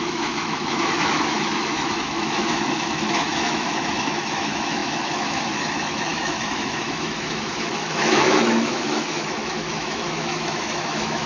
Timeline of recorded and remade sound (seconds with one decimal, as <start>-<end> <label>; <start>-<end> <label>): 0.0-11.3 remade